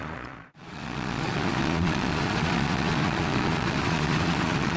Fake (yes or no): yes